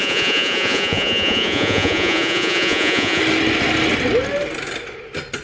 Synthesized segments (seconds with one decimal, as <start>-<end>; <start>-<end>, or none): 0.0-3.2